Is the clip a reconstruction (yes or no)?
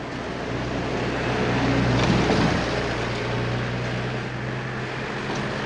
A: no